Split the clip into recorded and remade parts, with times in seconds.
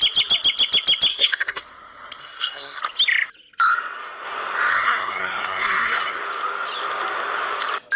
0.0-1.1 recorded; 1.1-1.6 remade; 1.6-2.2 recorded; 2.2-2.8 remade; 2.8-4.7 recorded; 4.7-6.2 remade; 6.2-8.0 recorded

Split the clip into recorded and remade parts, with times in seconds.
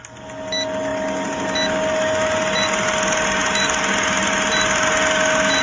0.0-5.6 recorded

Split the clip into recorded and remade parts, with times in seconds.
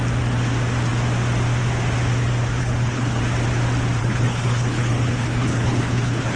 0.0-2.6 recorded; 2.6-3.2 remade; 3.2-4.0 recorded; 4.0-6.4 remade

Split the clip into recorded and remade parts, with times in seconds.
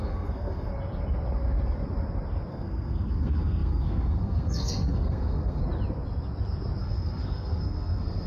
0.0-0.7 remade; 0.7-2.5 recorded; 2.5-5.6 remade; 5.6-6.8 recorded; 6.8-8.3 remade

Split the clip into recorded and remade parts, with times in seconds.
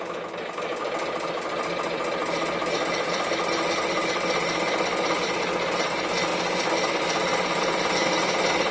0.0-8.7 recorded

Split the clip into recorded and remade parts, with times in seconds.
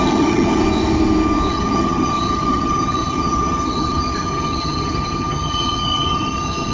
0.0-0.6 remade; 0.6-1.5 recorded; 1.5-6.7 remade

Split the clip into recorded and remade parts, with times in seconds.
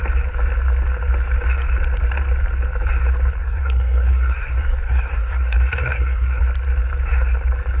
0.0-3.4 recorded; 3.4-6.4 remade; 6.4-7.8 recorded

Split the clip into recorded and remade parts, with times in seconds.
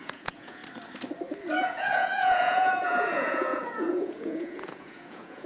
0.0-0.6 remade; 0.6-1.6 recorded; 1.6-5.5 remade